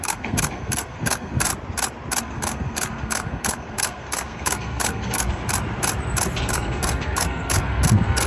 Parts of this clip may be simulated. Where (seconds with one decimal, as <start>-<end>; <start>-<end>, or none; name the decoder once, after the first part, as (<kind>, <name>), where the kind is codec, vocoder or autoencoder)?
0.0-1.5 (codec, SNAC); 2.2-5.4; 6.4-8.3